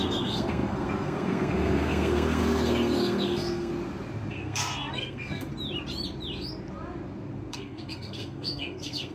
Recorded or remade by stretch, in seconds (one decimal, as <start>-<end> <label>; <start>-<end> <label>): 0.0-3.7 remade; 3.7-4.3 recorded; 4.3-5.5 remade; 5.5-7.5 recorded; 7.5-9.1 remade